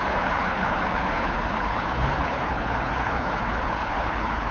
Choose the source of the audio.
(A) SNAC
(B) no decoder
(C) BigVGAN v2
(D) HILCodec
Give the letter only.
D